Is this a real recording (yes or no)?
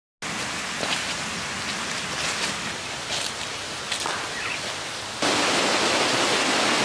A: yes